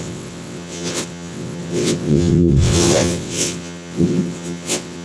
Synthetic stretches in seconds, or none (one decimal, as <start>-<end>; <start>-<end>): 0.0-5.0